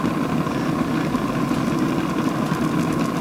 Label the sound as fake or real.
real